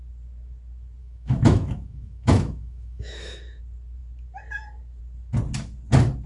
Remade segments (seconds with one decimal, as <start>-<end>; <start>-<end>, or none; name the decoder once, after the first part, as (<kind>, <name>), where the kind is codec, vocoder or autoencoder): 1.0-3.6 (autoencoder, DAC-VAE)